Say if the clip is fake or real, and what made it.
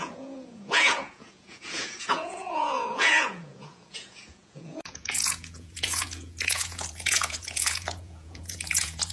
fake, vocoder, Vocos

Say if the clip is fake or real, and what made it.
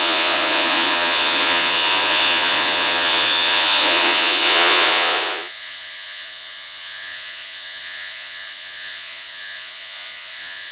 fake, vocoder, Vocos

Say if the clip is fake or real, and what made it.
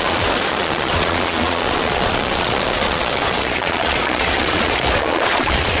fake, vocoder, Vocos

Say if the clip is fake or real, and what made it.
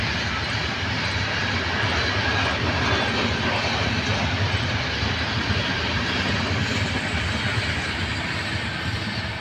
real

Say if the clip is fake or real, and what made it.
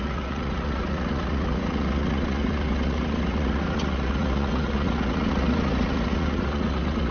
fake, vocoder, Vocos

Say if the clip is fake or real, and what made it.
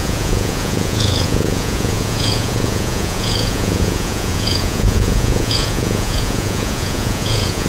fake, vocoder, Vocos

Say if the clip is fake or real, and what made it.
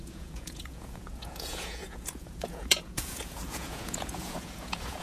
fake, vocoder, Vocos